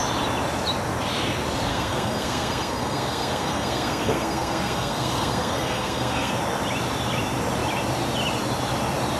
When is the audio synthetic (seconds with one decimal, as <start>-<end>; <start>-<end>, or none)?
1.7-6.3